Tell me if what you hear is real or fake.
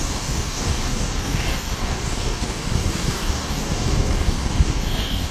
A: fake